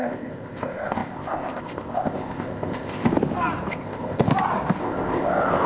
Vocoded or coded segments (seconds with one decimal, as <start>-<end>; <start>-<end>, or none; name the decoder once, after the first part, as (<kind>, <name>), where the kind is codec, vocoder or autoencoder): 0.0-3.1 (codec, ZipCodec); 3.7-4.3; 4.8-5.7